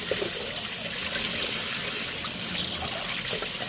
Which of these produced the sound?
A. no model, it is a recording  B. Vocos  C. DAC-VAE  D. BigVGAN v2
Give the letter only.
A